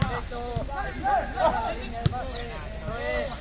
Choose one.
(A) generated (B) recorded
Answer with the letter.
B